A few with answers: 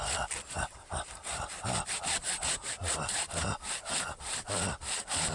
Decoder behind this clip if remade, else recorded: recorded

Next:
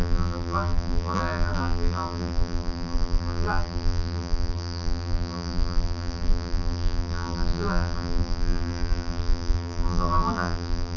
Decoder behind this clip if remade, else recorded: remade, vocoder, BigVGAN v2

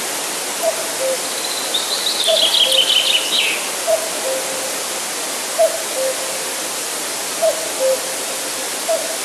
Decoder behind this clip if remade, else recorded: recorded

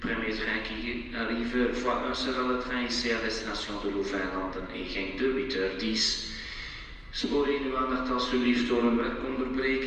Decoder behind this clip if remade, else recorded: recorded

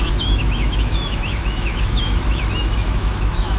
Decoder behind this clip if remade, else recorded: remade, autoencoder, DAC-VAE